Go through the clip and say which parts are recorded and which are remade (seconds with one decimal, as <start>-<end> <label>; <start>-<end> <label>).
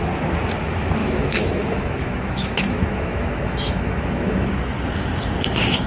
0.0-1.0 recorded; 1.0-4.5 remade; 4.5-5.9 recorded